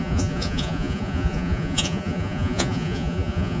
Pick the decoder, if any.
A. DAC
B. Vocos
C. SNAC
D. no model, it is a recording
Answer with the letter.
B